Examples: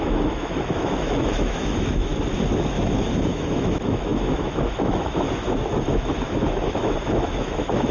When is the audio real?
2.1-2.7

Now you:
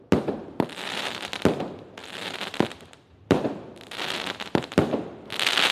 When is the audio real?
0.0-0.4; 1.4-2.0; 3.4-5.7

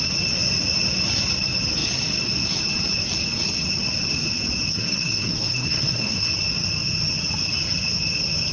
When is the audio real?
0.0-4.7; 6.3-8.5